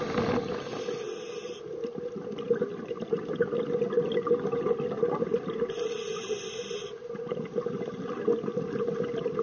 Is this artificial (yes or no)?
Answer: no